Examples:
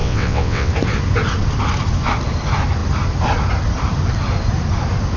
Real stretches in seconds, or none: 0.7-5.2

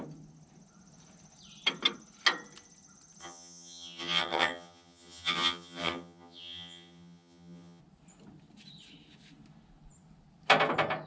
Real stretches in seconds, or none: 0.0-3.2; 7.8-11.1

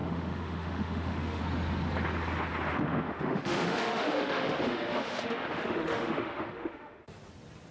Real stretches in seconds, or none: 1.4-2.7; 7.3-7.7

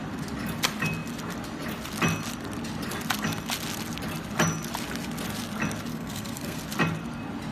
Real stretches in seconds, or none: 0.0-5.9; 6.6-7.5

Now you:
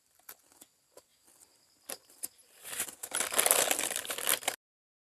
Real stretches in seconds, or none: 0.0-5.0

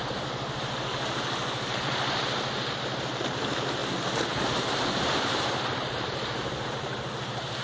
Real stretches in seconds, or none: 3.8-4.9